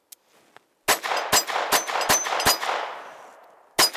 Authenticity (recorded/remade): recorded